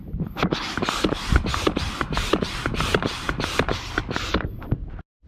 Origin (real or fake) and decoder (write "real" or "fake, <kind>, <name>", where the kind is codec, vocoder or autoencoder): real